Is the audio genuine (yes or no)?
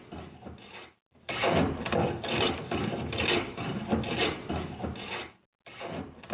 yes